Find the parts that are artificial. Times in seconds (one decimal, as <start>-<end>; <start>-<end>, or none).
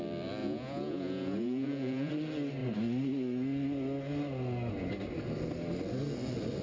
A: 0.4-2.1